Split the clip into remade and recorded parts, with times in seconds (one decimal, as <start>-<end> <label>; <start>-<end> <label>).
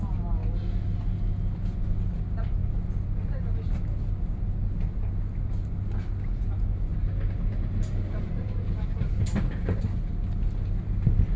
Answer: 0.0-11.4 recorded